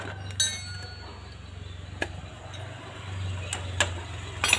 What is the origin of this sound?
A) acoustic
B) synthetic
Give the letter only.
A